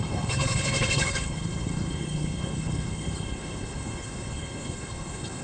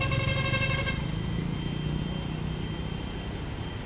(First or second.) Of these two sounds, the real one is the second